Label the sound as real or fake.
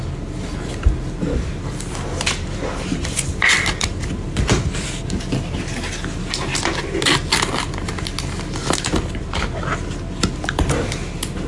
real